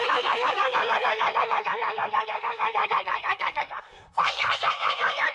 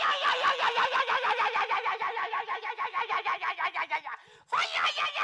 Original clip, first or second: second